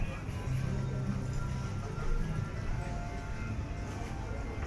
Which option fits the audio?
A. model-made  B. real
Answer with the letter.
B